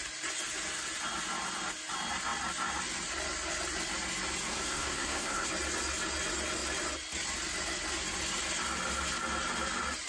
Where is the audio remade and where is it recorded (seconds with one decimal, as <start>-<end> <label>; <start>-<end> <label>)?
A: 0.0-4.5 recorded; 4.5-5.5 remade; 5.5-10.1 recorded